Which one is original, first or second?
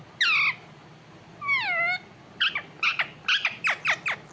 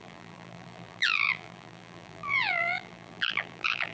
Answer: first